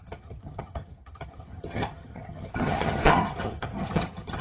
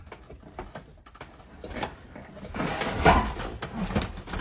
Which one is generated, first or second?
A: first